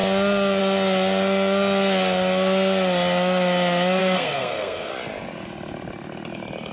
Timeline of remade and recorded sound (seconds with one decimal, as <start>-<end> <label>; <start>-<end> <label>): 0.0-4.0 recorded; 4.0-4.9 remade; 4.9-6.7 recorded